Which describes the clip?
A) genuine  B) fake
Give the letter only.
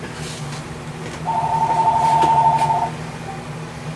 A